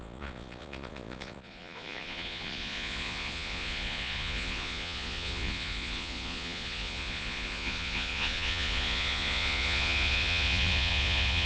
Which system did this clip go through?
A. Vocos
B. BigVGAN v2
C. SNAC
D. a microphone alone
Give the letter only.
A